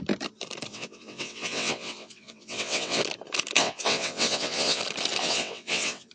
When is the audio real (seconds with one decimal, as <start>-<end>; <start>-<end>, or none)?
0.0-0.7; 3.0-3.6; 4.8-5.2